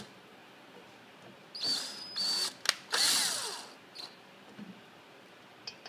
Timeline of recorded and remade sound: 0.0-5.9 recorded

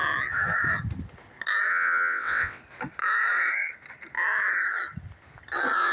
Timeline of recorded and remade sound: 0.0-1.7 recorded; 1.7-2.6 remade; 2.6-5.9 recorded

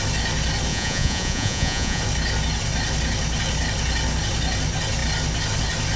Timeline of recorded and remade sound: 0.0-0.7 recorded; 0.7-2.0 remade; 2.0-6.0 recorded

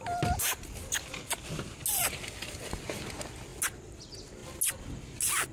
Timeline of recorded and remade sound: 0.0-5.5 recorded